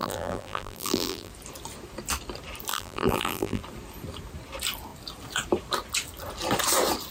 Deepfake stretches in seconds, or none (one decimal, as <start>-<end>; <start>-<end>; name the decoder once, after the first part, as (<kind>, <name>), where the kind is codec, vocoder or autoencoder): 0.0-1.3 (vocoder, BigVGAN v2); 2.7-3.6